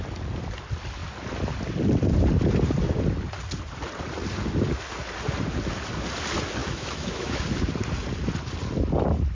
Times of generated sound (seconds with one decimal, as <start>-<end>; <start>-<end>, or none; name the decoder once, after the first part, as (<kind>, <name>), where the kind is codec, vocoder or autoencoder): 6.6-7.4 (autoencoder, DAC-VAE)